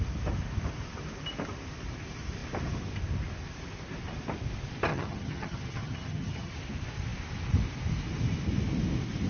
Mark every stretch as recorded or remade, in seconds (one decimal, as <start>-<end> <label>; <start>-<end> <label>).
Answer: 0.0-4.9 recorded; 4.9-6.5 remade; 6.5-9.3 recorded